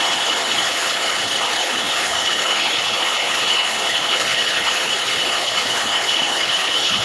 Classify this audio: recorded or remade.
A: remade